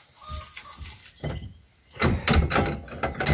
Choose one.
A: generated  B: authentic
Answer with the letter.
B